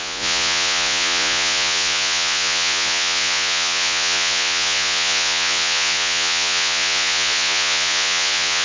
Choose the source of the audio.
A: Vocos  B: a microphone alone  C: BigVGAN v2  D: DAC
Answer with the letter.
A